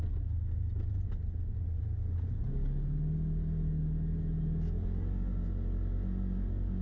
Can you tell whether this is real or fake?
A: real